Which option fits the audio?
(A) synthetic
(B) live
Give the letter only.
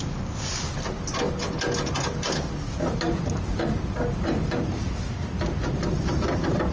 B